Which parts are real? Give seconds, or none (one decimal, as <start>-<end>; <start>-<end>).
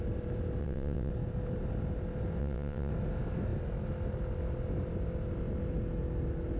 0.0-0.6; 1.1-2.4; 2.9-6.6